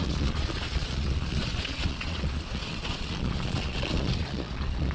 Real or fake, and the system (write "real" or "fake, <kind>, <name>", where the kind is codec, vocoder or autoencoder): fake, vocoder, Vocos